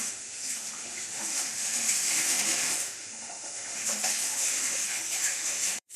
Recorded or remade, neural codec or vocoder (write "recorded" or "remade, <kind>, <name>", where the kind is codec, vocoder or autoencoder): remade, autoencoder, DAC-VAE